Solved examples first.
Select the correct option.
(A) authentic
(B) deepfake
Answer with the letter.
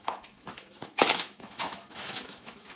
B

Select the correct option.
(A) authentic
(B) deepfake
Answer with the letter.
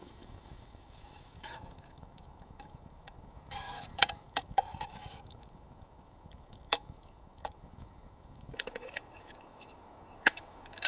B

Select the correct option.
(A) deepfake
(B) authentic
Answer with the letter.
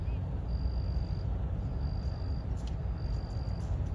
B